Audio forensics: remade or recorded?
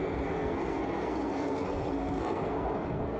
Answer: remade